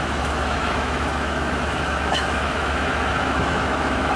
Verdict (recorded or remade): remade